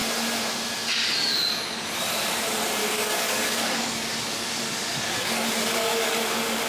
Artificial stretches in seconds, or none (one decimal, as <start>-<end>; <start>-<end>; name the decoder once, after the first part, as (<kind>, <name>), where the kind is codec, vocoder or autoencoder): 2.8-6.7 (codec, DAC)